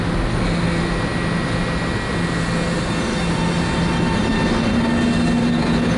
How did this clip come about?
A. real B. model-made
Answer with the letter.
A